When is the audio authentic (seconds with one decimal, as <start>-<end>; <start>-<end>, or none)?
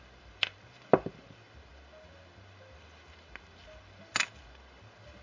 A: 0.0-5.2